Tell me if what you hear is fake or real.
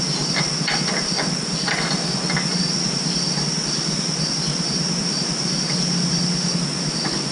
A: real